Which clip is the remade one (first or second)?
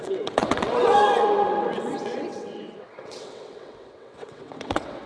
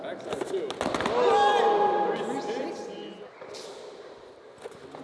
first